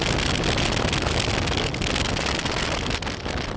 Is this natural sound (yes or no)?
yes